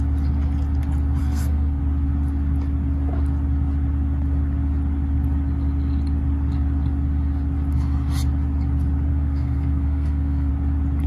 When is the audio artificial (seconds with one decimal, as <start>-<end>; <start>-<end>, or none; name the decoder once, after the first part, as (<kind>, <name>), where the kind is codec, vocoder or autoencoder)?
1.2-1.8 (codec, SNAC); 9.1-10.5